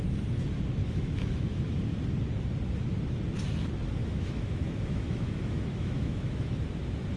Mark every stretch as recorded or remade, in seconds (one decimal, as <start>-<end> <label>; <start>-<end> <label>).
0.0-0.8 recorded; 0.8-1.6 remade; 1.6-4.0 recorded; 4.0-6.5 remade; 6.5-7.2 recorded